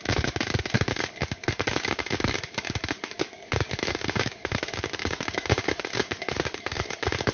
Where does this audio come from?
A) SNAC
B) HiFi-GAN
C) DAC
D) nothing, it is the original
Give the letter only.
C